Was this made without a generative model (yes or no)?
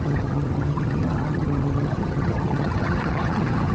no